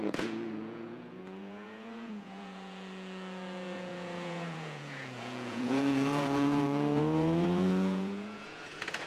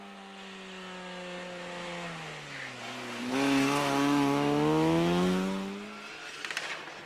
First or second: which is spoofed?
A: first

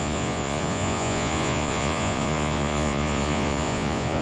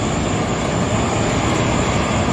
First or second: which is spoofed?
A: first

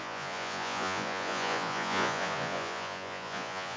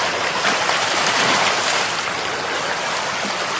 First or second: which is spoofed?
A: first